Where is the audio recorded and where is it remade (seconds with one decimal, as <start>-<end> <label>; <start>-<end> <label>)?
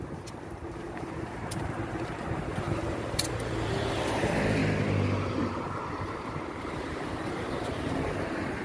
0.0-4.6 remade; 4.6-5.9 recorded; 5.9-8.6 remade